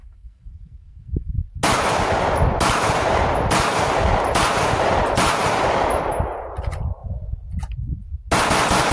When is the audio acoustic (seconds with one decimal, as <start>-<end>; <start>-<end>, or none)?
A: 1.4-8.9